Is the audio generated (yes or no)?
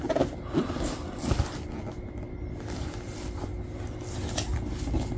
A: no